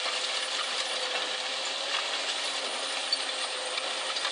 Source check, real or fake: real